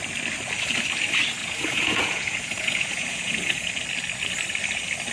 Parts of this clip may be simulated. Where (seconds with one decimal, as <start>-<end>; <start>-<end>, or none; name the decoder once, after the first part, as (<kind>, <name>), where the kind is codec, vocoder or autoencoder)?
1.4-3.7 (vocoder, Vocos)